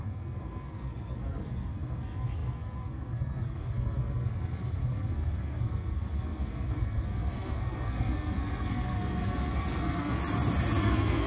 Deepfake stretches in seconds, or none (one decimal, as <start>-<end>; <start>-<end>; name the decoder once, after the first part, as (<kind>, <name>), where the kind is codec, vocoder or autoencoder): 0.0-10.2 (codec, SNAC); 10.8-11.3